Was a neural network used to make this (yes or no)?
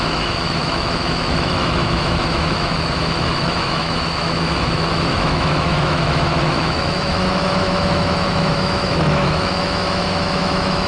yes